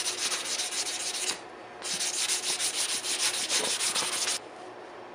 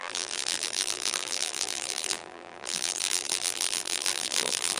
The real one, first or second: first